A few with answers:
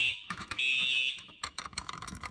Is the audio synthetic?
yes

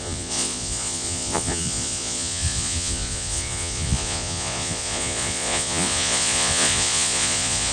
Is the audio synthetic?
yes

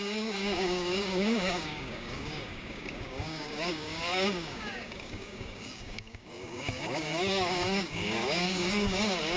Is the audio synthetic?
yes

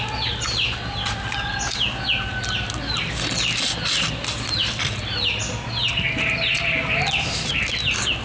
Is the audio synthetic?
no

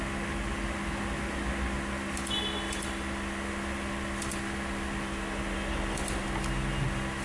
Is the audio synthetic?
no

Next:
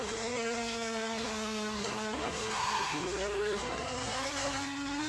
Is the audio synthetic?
yes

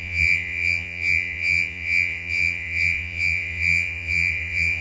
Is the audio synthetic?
yes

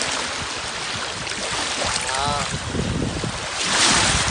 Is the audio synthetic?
no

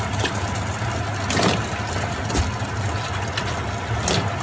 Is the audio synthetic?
no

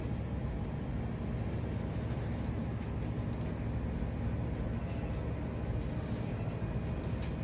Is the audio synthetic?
no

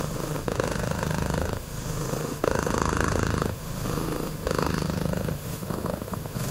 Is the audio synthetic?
yes